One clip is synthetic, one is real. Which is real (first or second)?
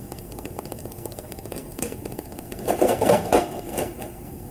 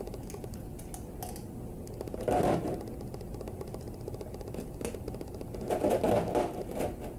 second